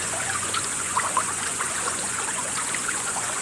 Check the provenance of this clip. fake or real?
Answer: fake